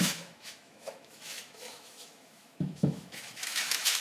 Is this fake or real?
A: fake